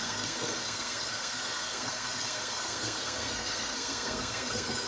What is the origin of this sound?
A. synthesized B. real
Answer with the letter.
A